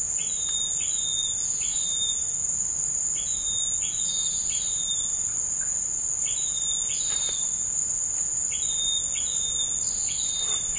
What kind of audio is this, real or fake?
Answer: real